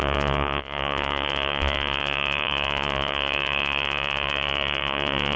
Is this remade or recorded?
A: remade